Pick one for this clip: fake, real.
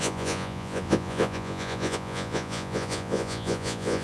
fake